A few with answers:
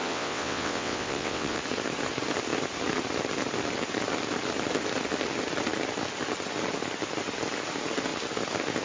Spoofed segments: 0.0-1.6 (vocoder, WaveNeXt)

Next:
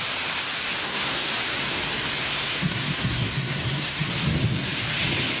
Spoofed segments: 0.8-1.3 (codec, SNAC); 2.2-4.1

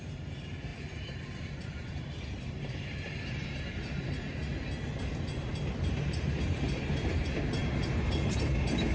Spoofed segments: 0.0-4.5 (vocoder, BigVGAN v2); 5.5-8.9

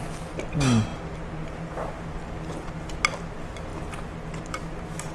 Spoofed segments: none